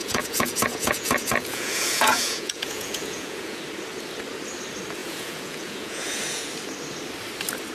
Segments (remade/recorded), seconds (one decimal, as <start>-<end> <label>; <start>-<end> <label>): 0.0-3.6 remade; 3.6-5.0 recorded; 5.0-6.5 remade; 6.5-7.7 recorded